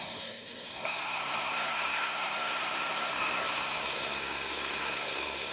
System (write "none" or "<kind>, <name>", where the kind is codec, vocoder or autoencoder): codec, SNAC